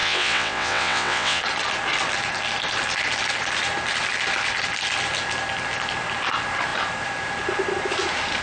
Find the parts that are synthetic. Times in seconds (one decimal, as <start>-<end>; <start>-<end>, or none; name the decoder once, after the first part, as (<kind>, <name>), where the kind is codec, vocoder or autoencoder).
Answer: 0.0-1.4 (vocoder, WaveNeXt)

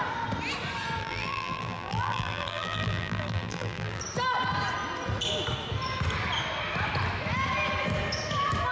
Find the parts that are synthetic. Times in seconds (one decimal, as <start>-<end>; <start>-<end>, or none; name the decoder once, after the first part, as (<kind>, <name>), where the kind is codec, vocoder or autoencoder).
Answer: 1.0-4.0 (vocoder, BigVGAN v2)

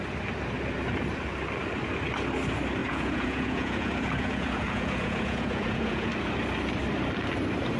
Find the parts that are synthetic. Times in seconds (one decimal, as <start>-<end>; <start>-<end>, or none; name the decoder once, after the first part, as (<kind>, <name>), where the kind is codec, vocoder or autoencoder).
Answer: 2.8-6.1 (vocoder, Vocos)

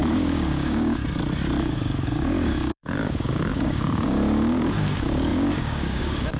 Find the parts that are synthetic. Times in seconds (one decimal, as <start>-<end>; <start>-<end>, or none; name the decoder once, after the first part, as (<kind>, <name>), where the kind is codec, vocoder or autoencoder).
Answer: 0.0-1.0 (codec, DAC); 1.6-6.4

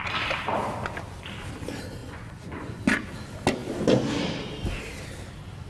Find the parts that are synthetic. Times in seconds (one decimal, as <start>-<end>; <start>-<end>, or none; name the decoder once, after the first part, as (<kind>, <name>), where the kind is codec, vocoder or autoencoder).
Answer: 2.0-3.1 (vocoder, Vocos)

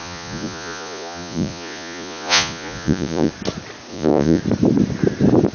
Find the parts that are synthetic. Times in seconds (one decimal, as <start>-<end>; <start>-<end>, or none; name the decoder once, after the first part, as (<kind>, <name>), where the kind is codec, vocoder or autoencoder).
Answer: 0.0-3.3 (vocoder, Vocos); 3.9-4.4

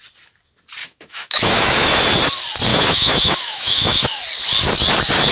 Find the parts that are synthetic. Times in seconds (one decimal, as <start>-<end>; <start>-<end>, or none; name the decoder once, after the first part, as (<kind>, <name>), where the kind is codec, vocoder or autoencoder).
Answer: 0.8-2.0 (autoencoder, DAC-VAE); 2.7-4.2

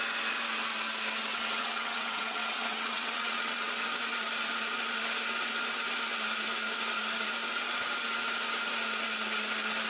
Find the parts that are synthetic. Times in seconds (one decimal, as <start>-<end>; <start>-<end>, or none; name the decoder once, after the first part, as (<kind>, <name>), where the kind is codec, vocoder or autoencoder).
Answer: 1.3-3.7 (vocoder, WaveNeXt)